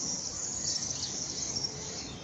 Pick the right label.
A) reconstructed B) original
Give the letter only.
B